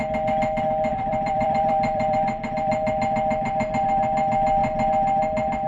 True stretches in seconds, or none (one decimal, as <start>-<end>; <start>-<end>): 0.0-0.9; 2.7-5.7